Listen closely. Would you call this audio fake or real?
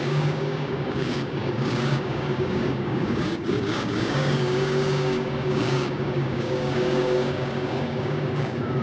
fake